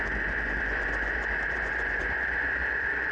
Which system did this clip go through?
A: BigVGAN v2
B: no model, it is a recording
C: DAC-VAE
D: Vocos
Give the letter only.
D